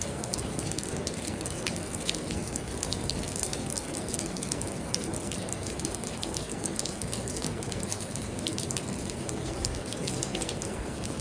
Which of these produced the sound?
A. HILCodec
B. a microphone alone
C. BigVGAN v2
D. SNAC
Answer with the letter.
D